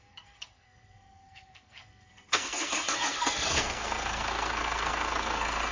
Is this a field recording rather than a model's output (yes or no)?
no